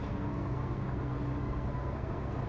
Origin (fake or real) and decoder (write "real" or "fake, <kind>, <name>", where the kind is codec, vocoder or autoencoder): fake, codec, SNAC